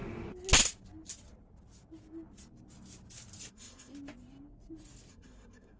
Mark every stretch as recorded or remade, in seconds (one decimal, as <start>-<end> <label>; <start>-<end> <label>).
0.0-3.5 recorded; 3.5-3.9 remade; 3.9-5.1 recorded; 5.1-5.8 remade